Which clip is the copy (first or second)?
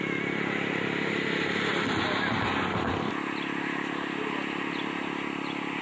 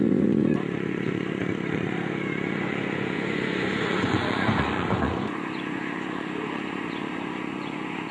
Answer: second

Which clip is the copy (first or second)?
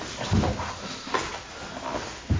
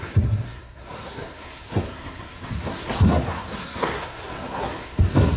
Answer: second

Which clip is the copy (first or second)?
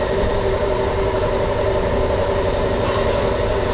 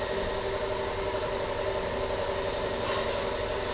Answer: first